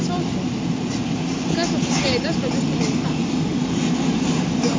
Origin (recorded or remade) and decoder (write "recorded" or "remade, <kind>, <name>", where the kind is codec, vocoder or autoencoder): recorded